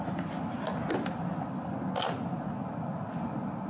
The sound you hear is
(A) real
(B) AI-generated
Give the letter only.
A